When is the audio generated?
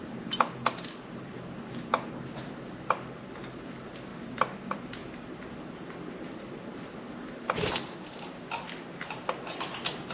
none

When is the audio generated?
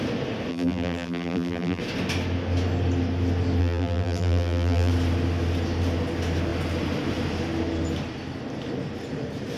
0.5-1.8 (vocoder, BigVGAN v2); 3.6-4.9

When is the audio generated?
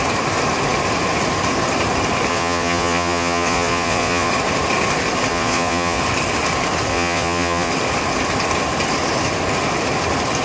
2.3-4.3 (vocoder, Vocos); 5.3-6.0; 6.9-7.7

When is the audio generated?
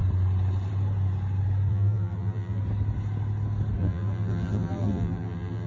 1.7-2.6 (vocoder, BigVGAN v2); 3.8-5.7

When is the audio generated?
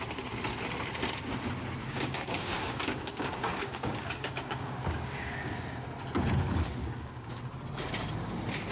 1.8-5.3 (codec, DAC); 6.8-7.3